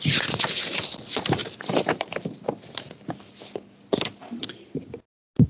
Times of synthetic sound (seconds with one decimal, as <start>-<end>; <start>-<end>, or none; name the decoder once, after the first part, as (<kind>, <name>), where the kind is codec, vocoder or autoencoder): none